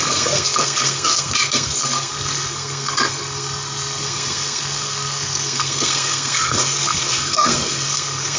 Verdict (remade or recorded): remade